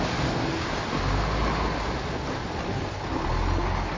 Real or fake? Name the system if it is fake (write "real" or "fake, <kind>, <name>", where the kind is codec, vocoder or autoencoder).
real